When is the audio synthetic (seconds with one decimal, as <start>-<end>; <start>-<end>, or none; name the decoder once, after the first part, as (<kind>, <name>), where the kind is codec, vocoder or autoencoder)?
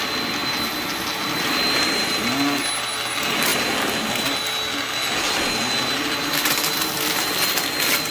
none